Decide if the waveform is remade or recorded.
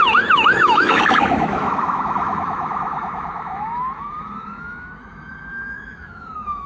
remade